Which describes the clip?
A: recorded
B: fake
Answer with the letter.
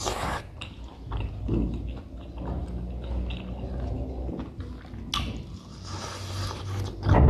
A